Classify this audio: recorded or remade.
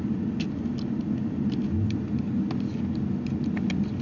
recorded